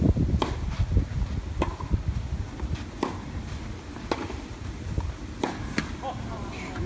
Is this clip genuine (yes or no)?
yes